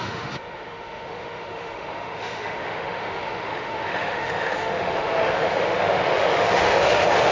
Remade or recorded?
remade